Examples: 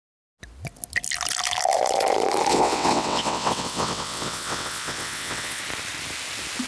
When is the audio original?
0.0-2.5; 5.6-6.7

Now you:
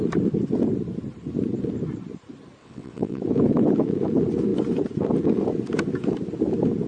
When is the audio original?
0.0-2.6; 3.2-6.9

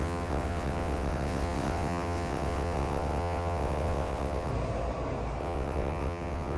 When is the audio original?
4.5-5.4

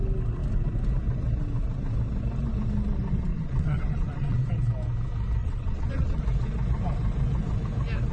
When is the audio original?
0.0-3.3; 4.6-5.4; 6.2-8.1

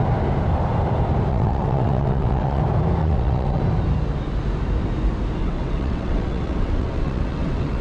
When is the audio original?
0.0-1.3; 2.6-3.0; 3.6-5.4

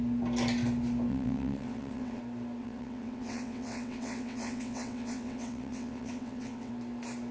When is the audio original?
0.0-1.1; 2.2-2.6; 6.7-7.3

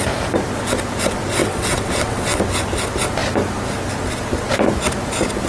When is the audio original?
0.0-1.4; 2.4-5.5

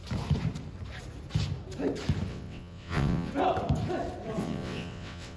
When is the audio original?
0.0-2.3; 3.3-4.4